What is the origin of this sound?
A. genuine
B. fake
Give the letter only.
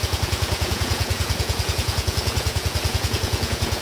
B